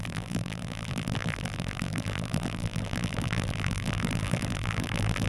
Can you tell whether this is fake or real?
fake